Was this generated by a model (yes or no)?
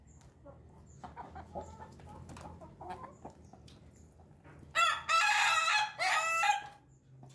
no